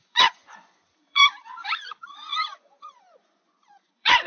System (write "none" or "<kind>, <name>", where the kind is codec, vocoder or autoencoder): vocoder, Vocos